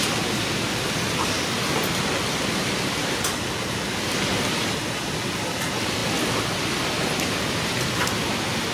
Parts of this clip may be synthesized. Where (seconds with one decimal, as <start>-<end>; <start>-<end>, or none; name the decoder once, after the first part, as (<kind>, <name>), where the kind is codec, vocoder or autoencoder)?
none